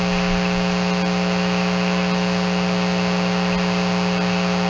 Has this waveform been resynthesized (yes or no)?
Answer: no